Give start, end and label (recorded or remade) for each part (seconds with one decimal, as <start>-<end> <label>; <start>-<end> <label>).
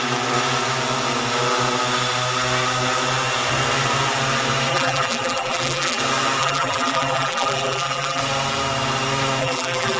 0.0-4.7 recorded; 4.7-6.0 remade; 6.0-6.4 recorded; 6.4-8.2 remade; 8.2-9.4 recorded; 9.4-10.0 remade